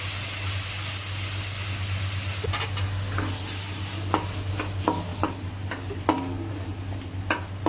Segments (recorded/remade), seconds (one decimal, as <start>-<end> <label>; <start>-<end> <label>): 0.0-7.7 recorded